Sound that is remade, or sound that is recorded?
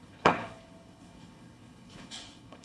remade